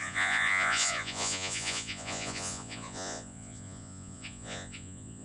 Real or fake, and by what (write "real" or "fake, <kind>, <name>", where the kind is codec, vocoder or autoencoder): fake, vocoder, Vocos